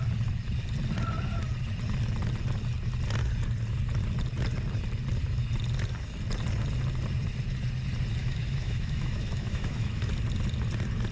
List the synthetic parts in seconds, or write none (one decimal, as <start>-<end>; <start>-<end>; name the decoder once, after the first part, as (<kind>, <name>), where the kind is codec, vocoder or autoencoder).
8.2-10.1 (autoencoder, DAC-VAE)